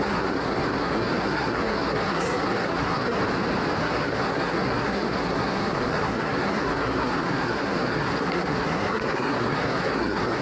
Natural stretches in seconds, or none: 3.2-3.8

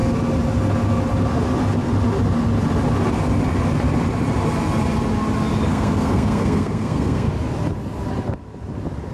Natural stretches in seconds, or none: 0.0-5.7; 7.3-9.1

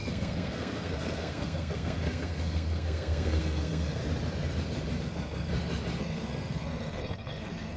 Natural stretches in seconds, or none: 4.0-5.0; 5.5-6.0

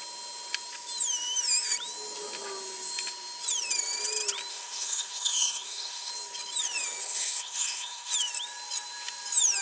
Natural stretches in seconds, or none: 0.0-4.5; 6.1-7.0; 8.1-9.6

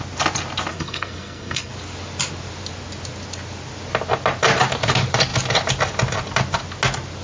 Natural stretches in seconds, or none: 0.0-0.7; 1.7-7.2

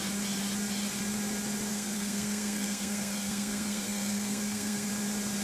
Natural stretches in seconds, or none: 0.0-1.7; 4.9-5.4